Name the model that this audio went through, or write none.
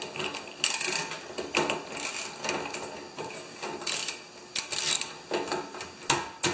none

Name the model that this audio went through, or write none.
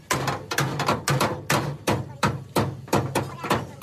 none